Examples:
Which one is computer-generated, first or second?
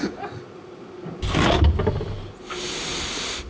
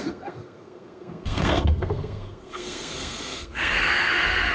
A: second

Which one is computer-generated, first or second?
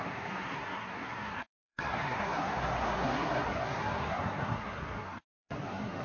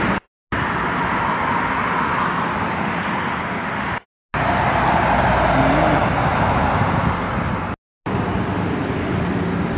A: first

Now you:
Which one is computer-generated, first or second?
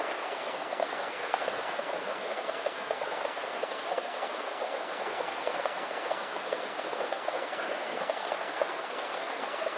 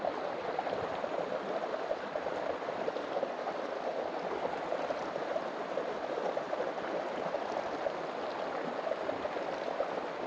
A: first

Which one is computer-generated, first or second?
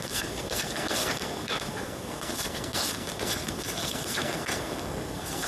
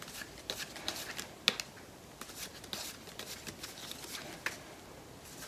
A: first